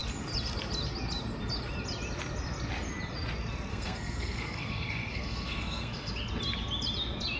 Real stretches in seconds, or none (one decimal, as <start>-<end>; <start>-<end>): 0.0-3.7; 6.1-7.4